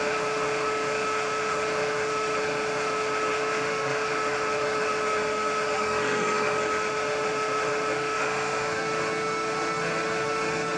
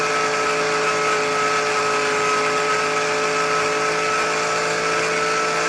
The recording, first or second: second